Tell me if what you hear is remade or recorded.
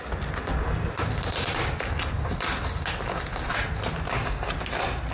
recorded